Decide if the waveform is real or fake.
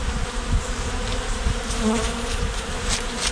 fake